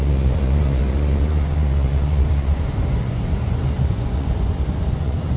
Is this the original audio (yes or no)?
no